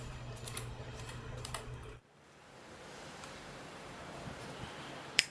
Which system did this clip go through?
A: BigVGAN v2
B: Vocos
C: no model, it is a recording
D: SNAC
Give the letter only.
A